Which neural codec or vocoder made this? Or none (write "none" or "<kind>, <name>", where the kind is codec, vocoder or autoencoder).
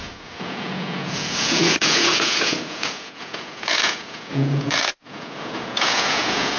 vocoder, Vocos